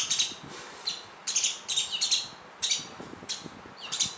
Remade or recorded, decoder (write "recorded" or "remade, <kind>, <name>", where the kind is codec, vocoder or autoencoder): recorded